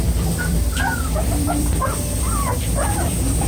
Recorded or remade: remade